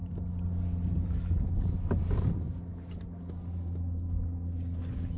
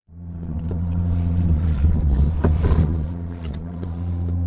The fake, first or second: second